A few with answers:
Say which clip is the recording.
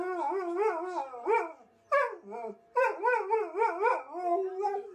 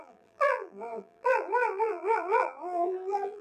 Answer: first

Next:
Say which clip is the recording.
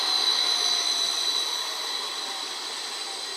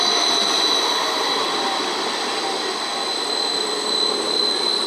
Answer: second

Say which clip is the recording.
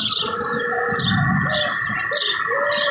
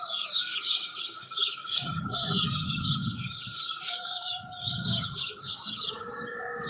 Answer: first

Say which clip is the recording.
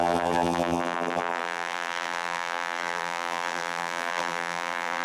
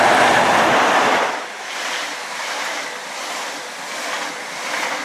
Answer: second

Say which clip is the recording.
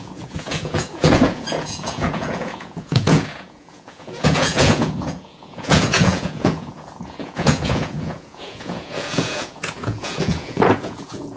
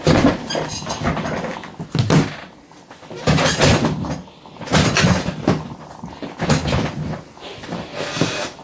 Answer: second